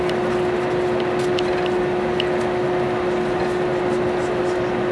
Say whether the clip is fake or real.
real